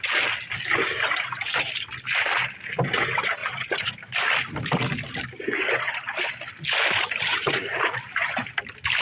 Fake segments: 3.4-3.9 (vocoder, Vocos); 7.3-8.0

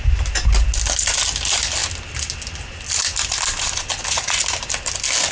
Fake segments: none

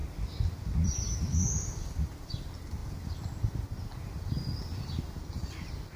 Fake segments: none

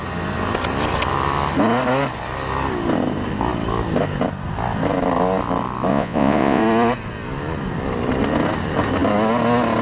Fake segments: 5.9-6.6 (vocoder, Vocos)

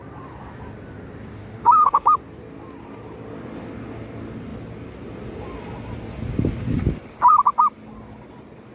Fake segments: 1.4-2.2 (autoencoder, DAC-VAE)

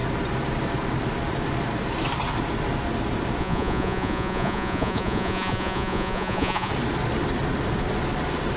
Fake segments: 3.4-6.7 (vocoder, Vocos)

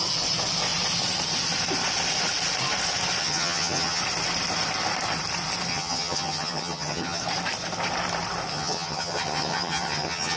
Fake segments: 3.2-4.0 (vocoder, HiFi-GAN); 5.7-7.2; 8.5-10.4